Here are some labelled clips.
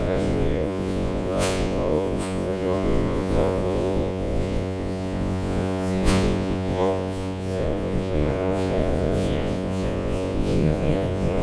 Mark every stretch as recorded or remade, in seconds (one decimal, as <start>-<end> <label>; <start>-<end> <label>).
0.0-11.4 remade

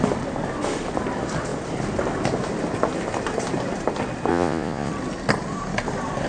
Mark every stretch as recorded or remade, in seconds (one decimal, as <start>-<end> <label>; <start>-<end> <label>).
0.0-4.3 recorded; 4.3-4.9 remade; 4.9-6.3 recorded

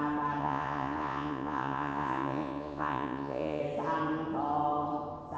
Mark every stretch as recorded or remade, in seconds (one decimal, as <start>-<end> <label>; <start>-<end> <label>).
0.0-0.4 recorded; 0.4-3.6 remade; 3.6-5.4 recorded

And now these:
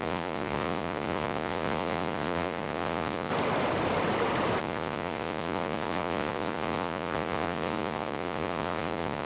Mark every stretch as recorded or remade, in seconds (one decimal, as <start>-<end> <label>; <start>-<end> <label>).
0.0-3.3 remade; 3.3-4.6 recorded; 4.6-9.3 remade

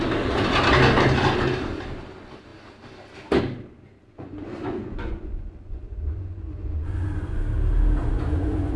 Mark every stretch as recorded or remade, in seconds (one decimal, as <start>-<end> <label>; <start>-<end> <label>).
0.0-4.0 recorded; 4.0-7.4 remade; 7.4-8.0 recorded; 8.0-8.8 remade

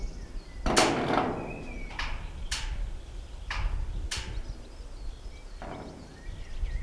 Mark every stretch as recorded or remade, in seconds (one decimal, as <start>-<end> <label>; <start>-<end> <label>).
0.0-6.8 recorded